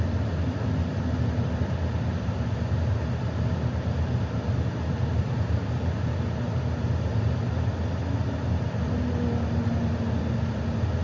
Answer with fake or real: real